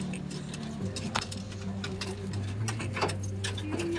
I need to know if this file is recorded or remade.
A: recorded